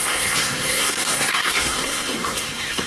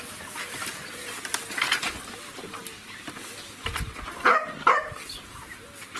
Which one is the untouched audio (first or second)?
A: second